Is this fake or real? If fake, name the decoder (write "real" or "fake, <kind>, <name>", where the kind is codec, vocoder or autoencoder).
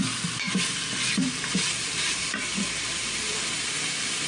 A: fake, vocoder, BigVGAN v2